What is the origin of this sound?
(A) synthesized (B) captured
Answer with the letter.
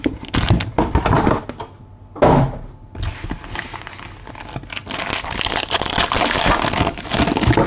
B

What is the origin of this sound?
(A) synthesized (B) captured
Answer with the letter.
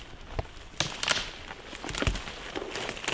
B